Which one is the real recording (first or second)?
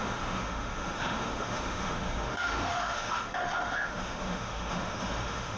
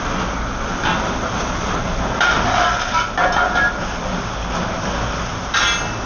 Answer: second